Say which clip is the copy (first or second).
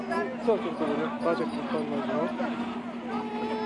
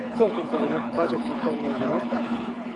second